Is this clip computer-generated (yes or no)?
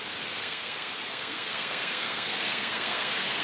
yes